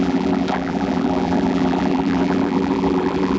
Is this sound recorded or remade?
remade